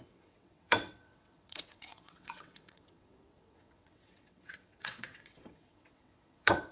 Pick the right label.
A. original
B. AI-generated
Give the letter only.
B